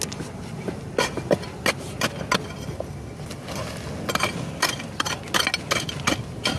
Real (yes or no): yes